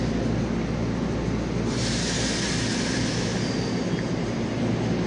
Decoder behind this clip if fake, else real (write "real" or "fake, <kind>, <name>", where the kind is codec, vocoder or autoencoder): real